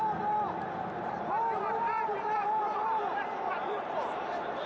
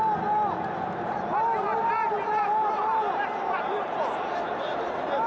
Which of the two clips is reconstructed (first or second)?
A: first